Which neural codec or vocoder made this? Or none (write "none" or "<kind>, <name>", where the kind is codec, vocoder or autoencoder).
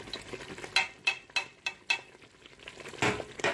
none